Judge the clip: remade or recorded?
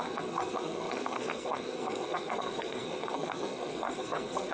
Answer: remade